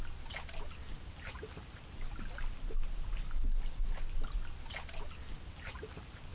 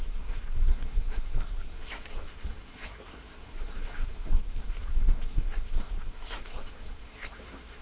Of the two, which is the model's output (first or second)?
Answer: second